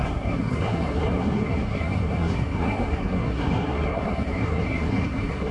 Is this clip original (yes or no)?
no